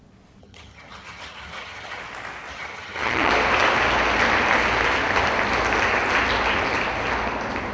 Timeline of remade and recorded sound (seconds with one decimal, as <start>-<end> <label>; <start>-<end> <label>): 0.0-0.4 recorded; 0.4-2.0 remade; 2.0-2.5 recorded; 2.5-3.3 remade; 3.3-7.7 recorded